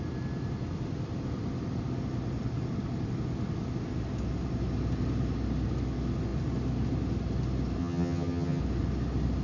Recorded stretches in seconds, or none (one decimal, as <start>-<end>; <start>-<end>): 0.0-7.8; 8.6-9.4